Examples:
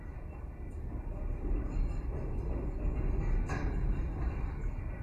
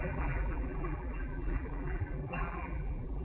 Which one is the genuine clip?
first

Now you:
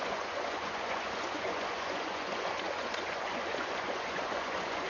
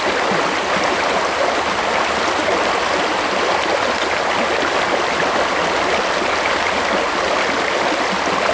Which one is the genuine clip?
second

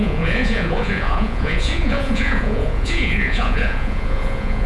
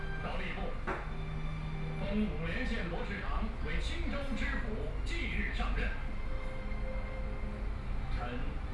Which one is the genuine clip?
second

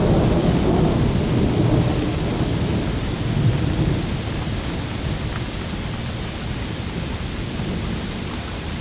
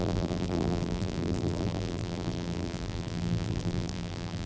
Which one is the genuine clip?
first